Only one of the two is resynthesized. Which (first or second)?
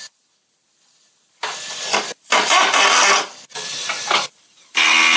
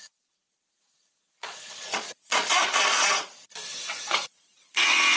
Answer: second